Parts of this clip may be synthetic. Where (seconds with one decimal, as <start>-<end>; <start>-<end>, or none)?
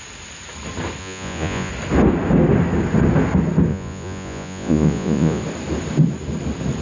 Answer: 1.0-1.7; 3.7-5.4